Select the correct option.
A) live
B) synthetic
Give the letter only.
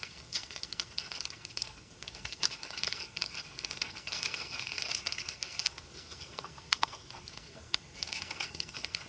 B